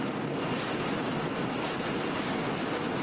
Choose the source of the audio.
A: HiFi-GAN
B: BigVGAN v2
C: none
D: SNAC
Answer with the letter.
C